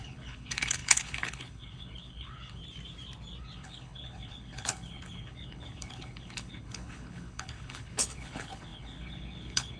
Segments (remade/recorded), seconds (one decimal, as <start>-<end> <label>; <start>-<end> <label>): 0.0-2.6 remade; 2.6-3.4 recorded; 3.4-9.8 remade